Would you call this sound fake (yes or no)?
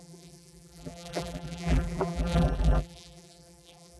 yes